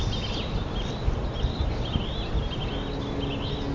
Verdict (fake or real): real